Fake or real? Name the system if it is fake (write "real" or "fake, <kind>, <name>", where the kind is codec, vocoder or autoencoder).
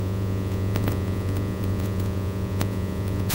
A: fake, vocoder, Vocos